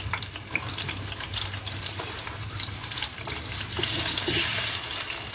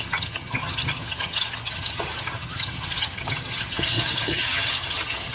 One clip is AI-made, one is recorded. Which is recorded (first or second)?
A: first